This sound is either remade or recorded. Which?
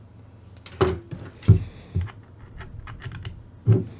recorded